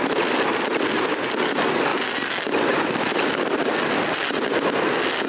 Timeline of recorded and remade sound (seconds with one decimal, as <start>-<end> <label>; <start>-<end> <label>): 0.0-5.3 recorded